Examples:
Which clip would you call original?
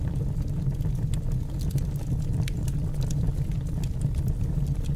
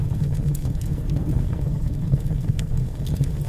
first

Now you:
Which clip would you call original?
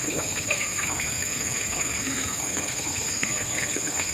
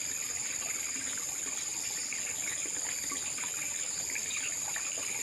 second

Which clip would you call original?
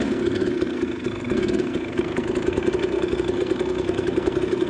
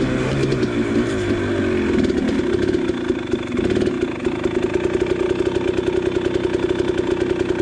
second